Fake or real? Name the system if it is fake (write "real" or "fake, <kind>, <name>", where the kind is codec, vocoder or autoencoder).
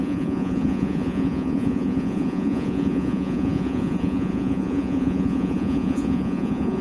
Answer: fake, vocoder, Vocos